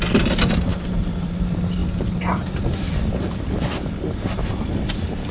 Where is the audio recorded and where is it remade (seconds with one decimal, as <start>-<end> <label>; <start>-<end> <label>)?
0.0-0.7 recorded; 0.7-1.3 remade; 1.3-5.3 recorded